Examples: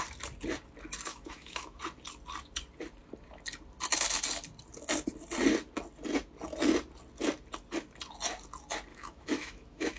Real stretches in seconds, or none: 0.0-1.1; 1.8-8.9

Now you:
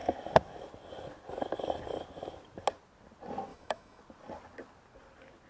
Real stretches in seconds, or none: 0.0-3.5; 4.0-5.5